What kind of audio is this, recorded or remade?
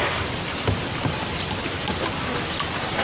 recorded